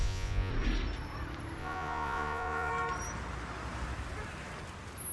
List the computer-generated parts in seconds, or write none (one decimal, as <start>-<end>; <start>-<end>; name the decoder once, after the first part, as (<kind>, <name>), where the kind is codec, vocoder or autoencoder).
0.0-0.5 (vocoder, Vocos); 1.6-2.7